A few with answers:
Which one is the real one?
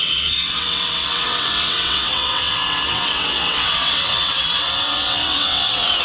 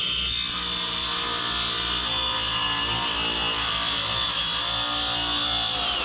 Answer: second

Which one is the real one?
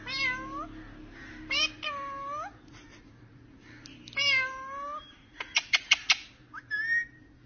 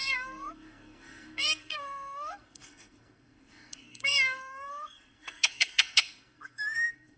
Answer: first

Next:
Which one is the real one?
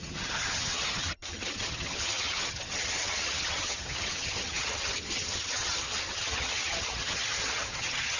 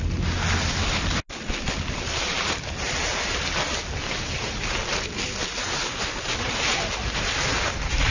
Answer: second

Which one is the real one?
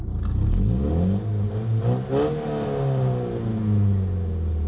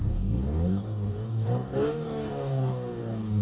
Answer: first